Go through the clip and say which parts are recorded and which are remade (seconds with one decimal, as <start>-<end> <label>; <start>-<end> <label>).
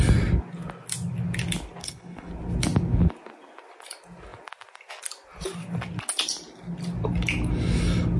0.0-1.8 recorded; 1.8-2.3 remade; 2.3-8.2 recorded